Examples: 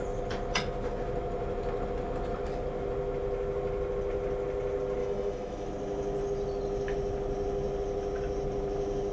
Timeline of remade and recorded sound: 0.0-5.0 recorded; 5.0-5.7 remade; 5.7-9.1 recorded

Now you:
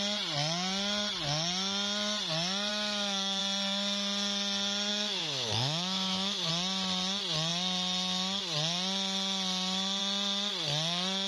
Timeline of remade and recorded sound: 0.0-2.7 recorded; 2.7-3.4 remade; 3.4-4.9 recorded; 4.9-6.5 remade; 6.5-11.3 recorded

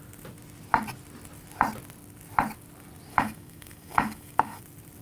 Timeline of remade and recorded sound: 0.0-3.1 recorded; 3.1-4.6 remade; 4.6-5.0 recorded

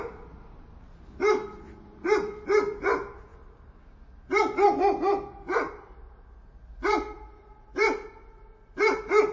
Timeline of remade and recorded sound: 0.0-9.3 recorded

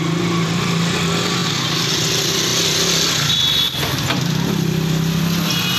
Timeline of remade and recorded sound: 0.0-5.8 recorded

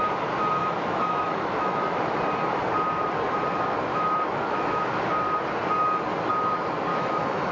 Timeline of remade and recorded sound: 0.0-0.6 recorded; 0.6-2.2 remade; 2.2-3.9 recorded; 3.9-5.0 remade; 5.0-6.9 recorded; 6.9-7.5 remade

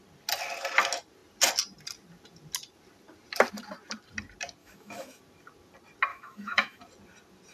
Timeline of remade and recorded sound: 0.0-4.6 recorded; 4.6-5.2 remade; 5.2-6.1 recorded; 6.1-6.8 remade; 6.8-7.5 recorded